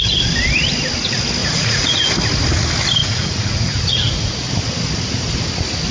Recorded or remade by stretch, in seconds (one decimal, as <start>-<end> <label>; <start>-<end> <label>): 0.0-1.4 recorded; 1.4-2.1 remade; 2.1-3.0 recorded; 3.0-4.5 remade; 4.5-5.9 recorded